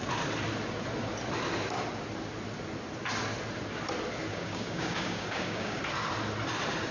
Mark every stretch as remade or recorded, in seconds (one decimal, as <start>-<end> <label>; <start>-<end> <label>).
0.0-4.3 recorded; 4.3-5.8 remade; 5.8-6.9 recorded